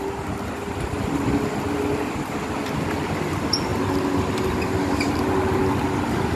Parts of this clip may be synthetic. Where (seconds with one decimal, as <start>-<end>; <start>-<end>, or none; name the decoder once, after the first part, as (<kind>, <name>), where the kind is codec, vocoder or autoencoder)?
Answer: none